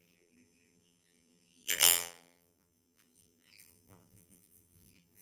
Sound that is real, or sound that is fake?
fake